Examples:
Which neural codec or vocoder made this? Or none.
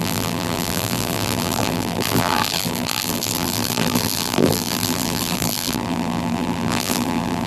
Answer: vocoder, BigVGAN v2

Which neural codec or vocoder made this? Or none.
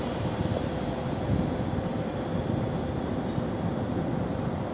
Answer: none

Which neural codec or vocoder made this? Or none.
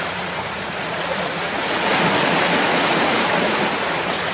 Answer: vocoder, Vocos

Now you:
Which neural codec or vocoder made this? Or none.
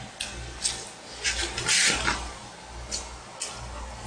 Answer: none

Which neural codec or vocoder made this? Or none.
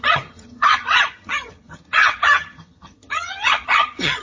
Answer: vocoder, HiFi-GAN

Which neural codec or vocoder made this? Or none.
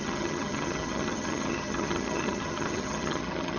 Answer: vocoder, HiFi-GAN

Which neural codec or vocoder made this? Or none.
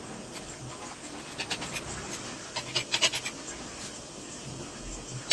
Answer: none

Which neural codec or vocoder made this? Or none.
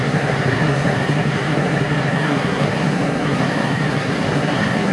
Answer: codec, SNAC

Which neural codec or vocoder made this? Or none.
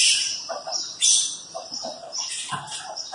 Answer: vocoder, BigVGAN v2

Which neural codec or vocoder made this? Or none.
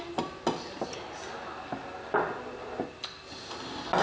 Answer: none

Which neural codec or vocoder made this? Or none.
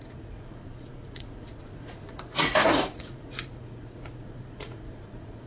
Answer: vocoder, Vocos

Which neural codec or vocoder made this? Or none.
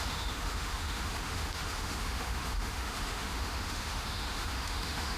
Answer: autoencoder, DAC-VAE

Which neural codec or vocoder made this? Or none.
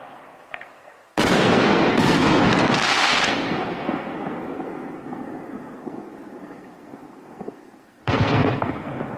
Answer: codec, SNAC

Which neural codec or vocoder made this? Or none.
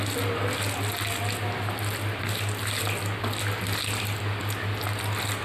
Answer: none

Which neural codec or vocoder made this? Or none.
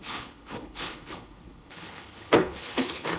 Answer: codec, HILCodec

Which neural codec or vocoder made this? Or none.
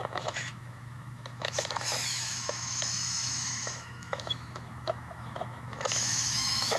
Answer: autoencoder, DAC-VAE